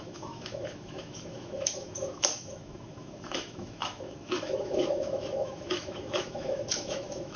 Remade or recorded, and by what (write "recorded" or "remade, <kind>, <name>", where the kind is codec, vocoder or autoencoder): remade, autoencoder, DAC-VAE